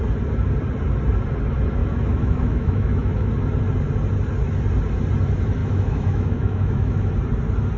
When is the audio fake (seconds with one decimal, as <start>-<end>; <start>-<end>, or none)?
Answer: 1.8-3.3; 5.6-7.1